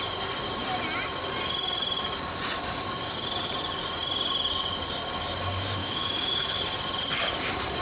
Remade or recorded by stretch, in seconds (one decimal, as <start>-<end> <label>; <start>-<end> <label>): 0.0-5.8 recorded; 5.8-6.6 remade; 6.6-7.8 recorded